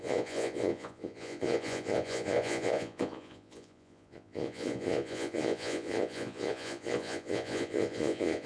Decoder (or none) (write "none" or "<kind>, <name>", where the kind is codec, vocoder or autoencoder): vocoder, Vocos